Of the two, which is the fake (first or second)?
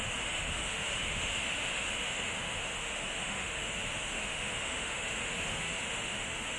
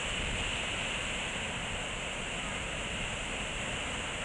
first